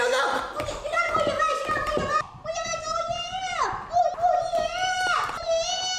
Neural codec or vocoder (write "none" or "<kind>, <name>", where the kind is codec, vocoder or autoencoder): none